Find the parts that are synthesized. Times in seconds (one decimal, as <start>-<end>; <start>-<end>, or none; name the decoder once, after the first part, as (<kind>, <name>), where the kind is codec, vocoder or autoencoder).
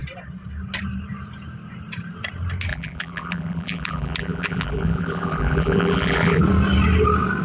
2.7-6.4 (vocoder, BigVGAN v2)